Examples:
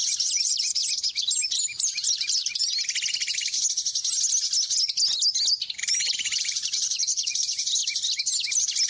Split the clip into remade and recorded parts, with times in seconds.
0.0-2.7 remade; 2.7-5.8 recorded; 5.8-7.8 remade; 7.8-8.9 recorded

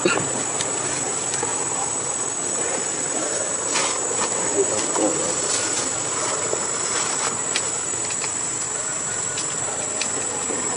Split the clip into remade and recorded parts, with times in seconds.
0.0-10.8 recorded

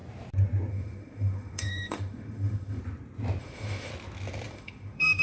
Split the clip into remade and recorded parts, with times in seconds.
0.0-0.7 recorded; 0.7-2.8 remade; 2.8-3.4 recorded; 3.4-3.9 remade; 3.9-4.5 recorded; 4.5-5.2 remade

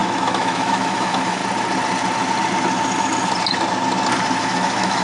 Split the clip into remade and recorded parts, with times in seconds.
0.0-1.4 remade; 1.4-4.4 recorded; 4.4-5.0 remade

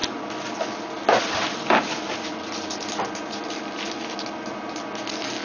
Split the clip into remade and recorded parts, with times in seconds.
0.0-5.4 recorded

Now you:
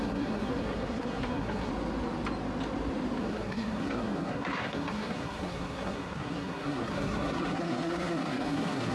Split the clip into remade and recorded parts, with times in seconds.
0.0-1.7 remade; 1.7-3.2 recorded; 3.2-8.9 remade

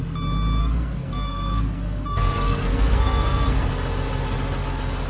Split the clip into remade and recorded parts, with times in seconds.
0.0-0.6 recorded; 0.6-3.7 remade; 3.7-5.1 recorded